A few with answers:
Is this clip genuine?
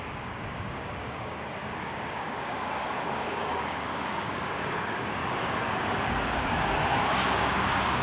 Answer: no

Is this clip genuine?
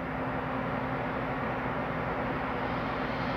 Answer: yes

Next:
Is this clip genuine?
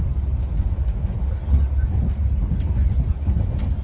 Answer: yes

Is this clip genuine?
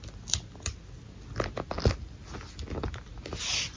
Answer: yes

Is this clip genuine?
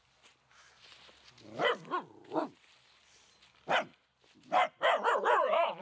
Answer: yes